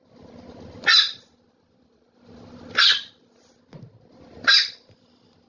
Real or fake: real